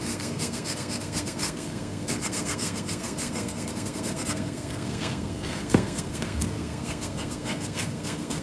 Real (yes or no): no